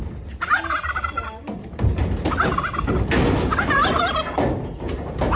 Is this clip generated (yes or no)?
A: no